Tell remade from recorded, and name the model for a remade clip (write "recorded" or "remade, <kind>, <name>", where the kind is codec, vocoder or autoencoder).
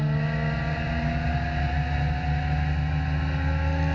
recorded